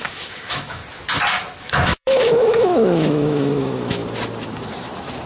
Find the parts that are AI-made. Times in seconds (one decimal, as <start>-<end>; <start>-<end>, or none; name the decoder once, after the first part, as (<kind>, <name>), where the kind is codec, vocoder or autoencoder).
0.0-0.8 (autoencoder, DAC-VAE); 1.6-4.0